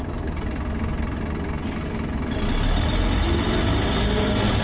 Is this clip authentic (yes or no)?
yes